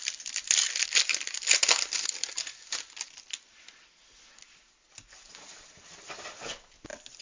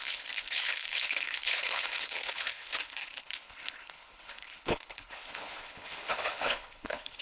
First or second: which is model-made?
second